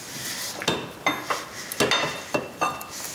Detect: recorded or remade recorded